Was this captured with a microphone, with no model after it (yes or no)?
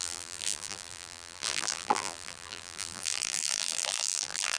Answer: no